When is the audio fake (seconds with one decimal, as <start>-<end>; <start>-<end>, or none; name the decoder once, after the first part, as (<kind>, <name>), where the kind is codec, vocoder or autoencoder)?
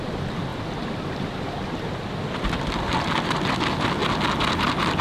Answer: 0.5-3.5 (vocoder, BigVGAN v2)